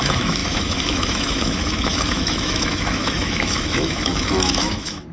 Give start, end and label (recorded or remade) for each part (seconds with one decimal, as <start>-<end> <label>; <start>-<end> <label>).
0.0-5.1 remade

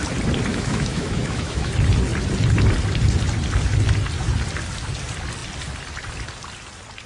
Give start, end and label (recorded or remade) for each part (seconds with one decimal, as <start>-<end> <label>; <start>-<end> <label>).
0.0-0.5 recorded; 0.5-1.7 remade; 1.7-7.1 recorded

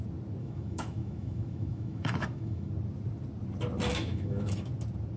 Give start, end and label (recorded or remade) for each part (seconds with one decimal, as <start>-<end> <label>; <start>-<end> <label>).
0.0-0.4 recorded; 0.4-2.7 remade; 2.7-3.9 recorded; 3.9-4.7 remade; 4.7-5.2 recorded

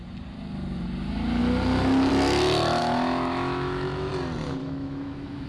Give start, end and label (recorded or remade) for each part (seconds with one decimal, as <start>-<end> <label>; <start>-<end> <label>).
0.0-2.8 recorded; 2.8-4.1 remade; 4.1-4.6 recorded; 4.6-5.5 remade

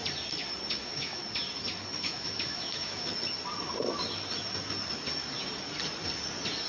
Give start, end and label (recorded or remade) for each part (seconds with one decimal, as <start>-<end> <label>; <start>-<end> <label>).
0.0-0.7 recorded; 0.7-1.2 remade; 1.2-2.0 recorded; 2.0-3.1 remade; 3.1-6.7 recorded

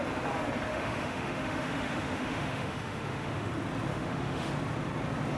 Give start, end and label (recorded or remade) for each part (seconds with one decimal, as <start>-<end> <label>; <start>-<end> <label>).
0.0-0.7 recorded; 0.7-3.5 remade; 3.5-3.9 recorded; 3.9-4.5 remade; 4.5-5.4 recorded

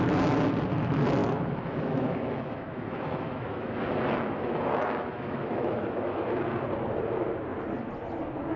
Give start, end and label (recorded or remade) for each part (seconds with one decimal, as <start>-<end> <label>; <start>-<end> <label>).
0.0-1.2 recorded; 1.2-6.3 remade; 6.3-8.6 recorded

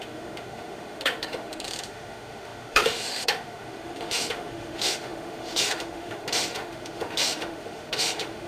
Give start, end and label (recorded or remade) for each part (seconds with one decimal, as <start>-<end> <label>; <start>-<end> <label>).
0.0-8.5 remade